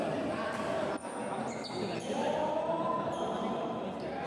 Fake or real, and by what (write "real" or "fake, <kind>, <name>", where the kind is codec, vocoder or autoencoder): real